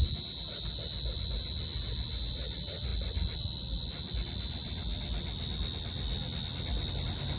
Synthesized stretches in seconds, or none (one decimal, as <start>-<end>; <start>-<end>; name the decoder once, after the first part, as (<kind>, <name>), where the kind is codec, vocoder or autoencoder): none